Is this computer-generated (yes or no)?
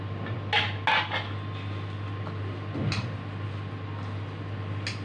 no